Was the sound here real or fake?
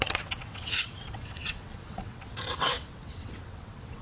fake